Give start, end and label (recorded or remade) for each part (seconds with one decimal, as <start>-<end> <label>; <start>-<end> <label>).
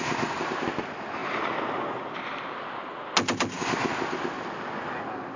0.0-5.4 recorded